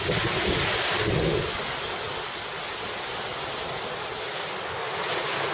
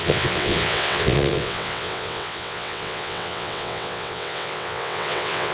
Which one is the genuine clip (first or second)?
first